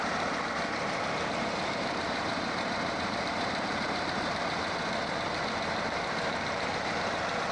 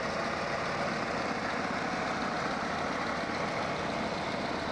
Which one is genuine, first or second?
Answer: second